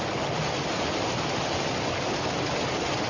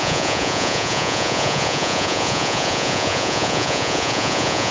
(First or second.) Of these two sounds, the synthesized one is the second